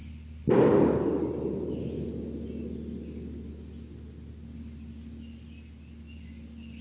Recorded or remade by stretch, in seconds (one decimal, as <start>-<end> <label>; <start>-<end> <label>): 0.0-6.8 recorded